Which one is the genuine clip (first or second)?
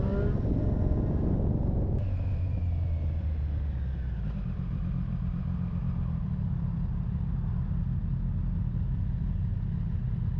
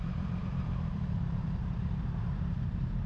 first